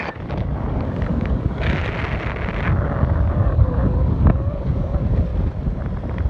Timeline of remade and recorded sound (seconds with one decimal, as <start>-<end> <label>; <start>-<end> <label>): 0.0-1.8 remade; 1.8-2.8 recorded; 2.8-5.3 remade; 5.3-6.3 recorded